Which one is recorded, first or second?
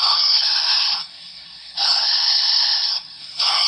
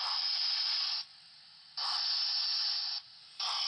second